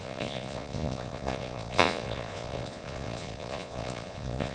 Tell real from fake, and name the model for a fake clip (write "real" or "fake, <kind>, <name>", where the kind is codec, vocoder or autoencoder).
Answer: fake, vocoder, Vocos